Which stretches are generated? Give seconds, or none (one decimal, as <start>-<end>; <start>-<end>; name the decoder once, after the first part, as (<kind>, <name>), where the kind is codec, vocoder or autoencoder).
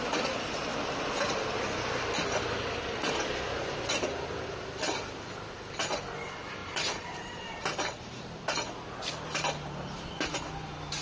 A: 6.6-8.4 (vocoder, BigVGAN v2)